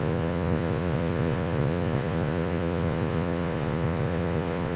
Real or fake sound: fake